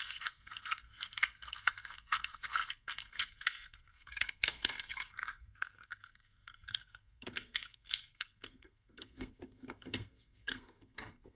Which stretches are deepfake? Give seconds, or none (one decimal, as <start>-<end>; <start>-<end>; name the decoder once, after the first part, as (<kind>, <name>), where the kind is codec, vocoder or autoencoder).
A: 0.0-11.4 (codec, SNAC)